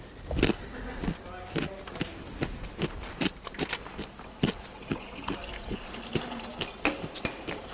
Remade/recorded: recorded